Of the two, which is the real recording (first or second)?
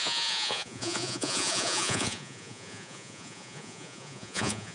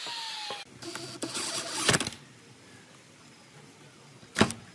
second